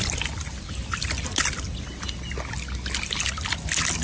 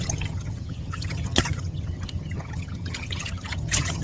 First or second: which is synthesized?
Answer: second